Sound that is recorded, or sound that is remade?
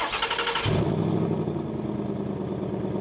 recorded